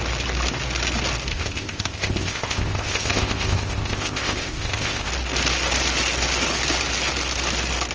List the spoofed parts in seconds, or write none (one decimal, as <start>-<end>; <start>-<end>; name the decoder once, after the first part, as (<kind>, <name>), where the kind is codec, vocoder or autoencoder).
1.3-5.1 (codec, ZipCodec)